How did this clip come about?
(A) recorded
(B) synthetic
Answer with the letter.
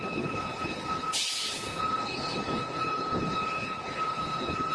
B